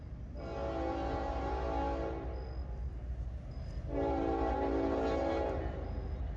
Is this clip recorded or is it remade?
recorded